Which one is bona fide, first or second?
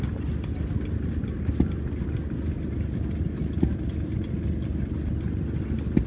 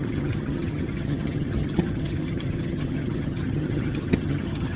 first